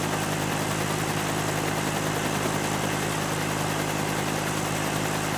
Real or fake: real